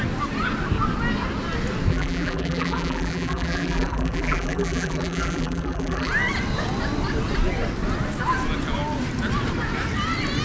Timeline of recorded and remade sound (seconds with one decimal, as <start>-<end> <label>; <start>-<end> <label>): 0.0-1.9 recorded; 1.9-6.1 remade; 6.1-10.4 recorded

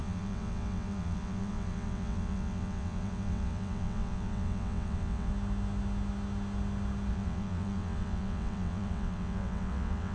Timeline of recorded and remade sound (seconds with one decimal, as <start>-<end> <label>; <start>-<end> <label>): 0.0-5.3 remade; 5.3-7.1 recorded; 7.1-10.1 remade

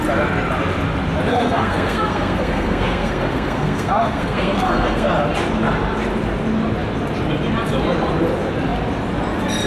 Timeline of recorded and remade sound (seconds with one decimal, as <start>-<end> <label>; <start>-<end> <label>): 0.0-1.3 recorded; 1.3-5.1 remade; 5.1-9.7 recorded

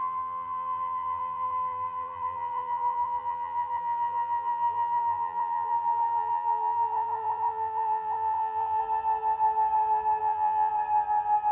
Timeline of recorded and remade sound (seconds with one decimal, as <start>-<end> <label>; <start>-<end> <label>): 0.0-8.8 remade; 8.8-10.2 recorded; 10.2-10.7 remade; 10.7-11.5 recorded

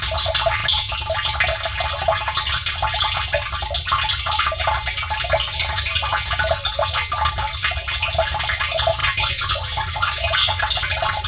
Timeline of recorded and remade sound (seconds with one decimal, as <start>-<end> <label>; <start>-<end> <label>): 0.0-9.0 recorded; 9.0-10.6 remade; 10.6-11.3 recorded

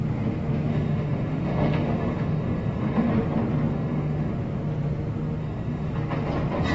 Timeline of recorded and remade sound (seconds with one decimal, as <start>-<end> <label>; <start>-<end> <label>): 0.0-0.7 recorded; 0.7-3.1 remade; 3.1-3.7 recorded; 3.7-4.3 remade; 4.3-5.4 recorded; 5.4-5.9 remade; 5.9-6.7 recorded

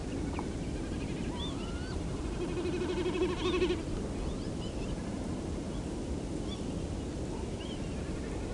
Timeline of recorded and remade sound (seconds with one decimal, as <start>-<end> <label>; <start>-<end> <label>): 0.0-8.5 recorded

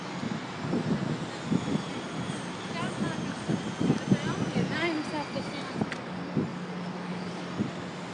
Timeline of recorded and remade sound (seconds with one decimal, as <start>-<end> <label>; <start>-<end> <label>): 0.0-6.5 recorded; 6.5-7.3 remade; 7.3-8.1 recorded